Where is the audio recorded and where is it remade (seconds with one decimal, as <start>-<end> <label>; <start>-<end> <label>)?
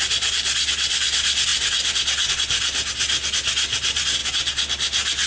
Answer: 0.0-5.3 recorded